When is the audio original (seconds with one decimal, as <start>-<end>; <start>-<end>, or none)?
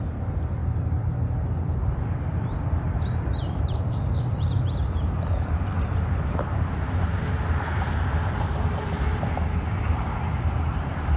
none